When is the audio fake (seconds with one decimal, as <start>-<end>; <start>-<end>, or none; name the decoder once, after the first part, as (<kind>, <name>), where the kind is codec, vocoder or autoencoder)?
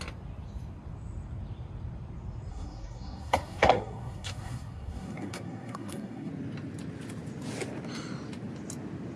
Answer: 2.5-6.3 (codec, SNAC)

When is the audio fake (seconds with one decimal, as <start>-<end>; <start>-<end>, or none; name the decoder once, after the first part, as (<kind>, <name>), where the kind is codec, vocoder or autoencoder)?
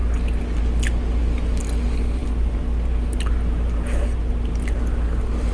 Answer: none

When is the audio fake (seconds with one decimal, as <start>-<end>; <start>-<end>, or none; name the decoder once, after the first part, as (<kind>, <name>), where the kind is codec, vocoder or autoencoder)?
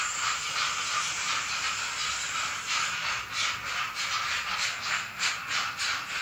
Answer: 4.5-5.3 (codec, SNAC)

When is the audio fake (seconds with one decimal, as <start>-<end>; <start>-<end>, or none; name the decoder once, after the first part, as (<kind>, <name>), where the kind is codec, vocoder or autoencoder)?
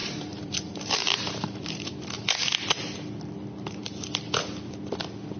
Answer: 0.0-1.9 (vocoder, BigVGAN v2)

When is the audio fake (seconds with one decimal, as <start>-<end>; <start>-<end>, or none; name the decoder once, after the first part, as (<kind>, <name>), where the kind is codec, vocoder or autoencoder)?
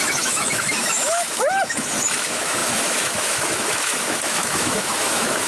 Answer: 0.0-5.5 (autoencoder, DAC-VAE)